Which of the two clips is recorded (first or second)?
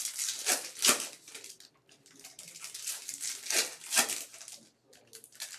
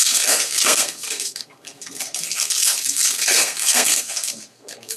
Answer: first